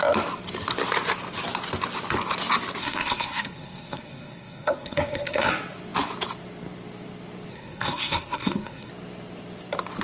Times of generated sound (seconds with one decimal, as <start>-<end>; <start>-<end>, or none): 2.8-5.5; 7.5-8.9